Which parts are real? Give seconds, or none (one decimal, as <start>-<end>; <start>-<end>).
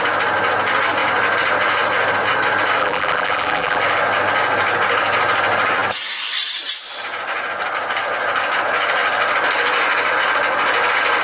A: 0.0-2.8; 3.8-11.2